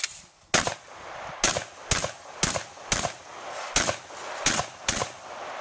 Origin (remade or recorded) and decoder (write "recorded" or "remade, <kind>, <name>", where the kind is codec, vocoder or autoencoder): recorded